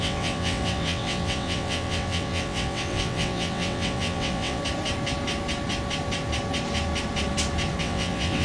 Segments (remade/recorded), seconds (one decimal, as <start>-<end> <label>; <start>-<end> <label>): 0.0-4.6 remade; 4.6-7.8 recorded; 7.8-8.4 remade